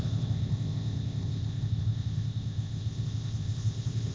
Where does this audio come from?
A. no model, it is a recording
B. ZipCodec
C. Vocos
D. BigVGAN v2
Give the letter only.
B